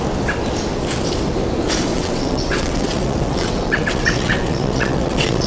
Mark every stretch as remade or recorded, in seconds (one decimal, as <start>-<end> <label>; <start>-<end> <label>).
0.0-1.9 recorded; 1.9-5.5 remade